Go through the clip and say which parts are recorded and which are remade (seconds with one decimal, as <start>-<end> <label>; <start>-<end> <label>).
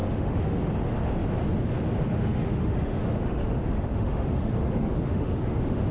0.0-0.6 remade; 0.6-2.1 recorded; 2.1-5.9 remade